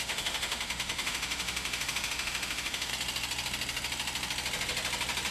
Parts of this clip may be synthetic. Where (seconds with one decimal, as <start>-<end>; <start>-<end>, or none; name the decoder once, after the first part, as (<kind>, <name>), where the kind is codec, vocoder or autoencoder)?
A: 0.0-2.9 (autoencoder, DAC-VAE)

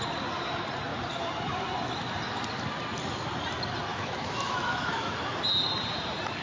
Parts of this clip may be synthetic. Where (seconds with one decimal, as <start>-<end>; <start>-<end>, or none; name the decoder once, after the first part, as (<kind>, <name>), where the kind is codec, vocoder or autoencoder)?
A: 3.9-5.4 (autoencoder, DAC-VAE)

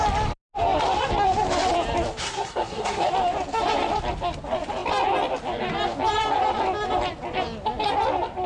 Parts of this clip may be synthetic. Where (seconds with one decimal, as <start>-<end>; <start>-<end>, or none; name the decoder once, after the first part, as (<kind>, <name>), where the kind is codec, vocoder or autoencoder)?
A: 2.2-3.1 (codec, SNAC)

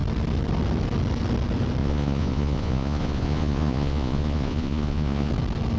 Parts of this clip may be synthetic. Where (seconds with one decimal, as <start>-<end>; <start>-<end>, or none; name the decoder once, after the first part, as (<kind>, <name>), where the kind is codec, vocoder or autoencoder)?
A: 1.8-5.3 (vocoder, Vocos)